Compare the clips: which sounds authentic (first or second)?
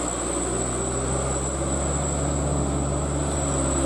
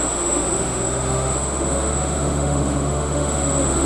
first